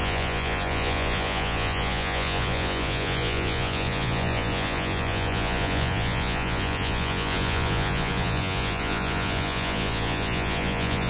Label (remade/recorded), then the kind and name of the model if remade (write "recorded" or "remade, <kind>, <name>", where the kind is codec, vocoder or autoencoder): remade, vocoder, Vocos